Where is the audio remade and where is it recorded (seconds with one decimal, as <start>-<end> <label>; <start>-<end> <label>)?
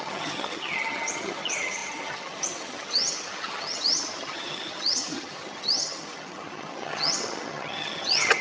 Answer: 0.0-8.4 remade